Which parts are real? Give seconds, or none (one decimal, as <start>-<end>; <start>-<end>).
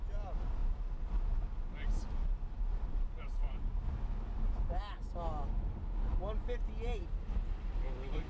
0.6-2.6; 3.7-7.0